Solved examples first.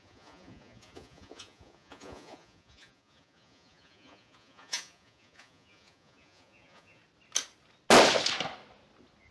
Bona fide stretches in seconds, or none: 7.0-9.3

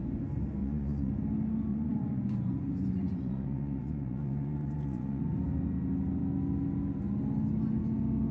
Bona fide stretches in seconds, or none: 0.0-0.6; 1.1-1.7; 5.2-8.3

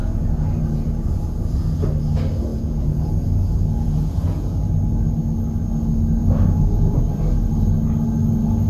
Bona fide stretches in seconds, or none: 1.8-2.5; 4.7-6.2; 7.0-8.7

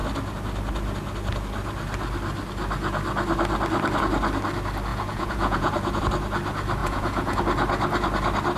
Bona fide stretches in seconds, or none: 0.0-4.9; 6.0-6.8; 7.4-8.6

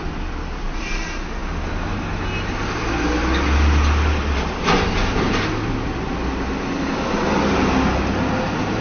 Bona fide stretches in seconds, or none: 0.0-8.8

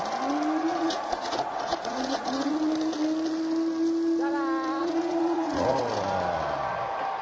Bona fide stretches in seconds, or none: 0.0-0.6; 2.5-4.8; 5.8-7.2

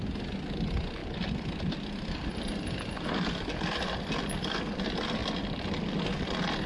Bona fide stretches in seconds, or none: 0.0-6.7